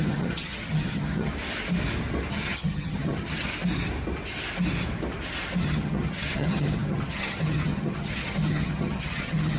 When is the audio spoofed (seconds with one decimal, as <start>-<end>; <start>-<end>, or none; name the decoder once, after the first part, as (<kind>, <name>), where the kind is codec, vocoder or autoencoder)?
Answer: 0.0-1.3 (vocoder, HiFi-GAN); 2.3-3.5; 5.6-9.6